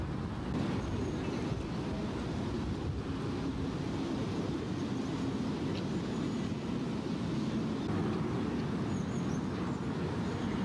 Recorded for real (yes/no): yes